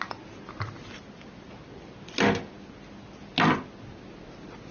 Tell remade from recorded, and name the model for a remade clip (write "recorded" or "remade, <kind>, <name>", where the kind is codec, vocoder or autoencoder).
recorded